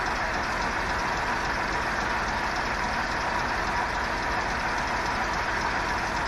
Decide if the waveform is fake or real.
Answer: real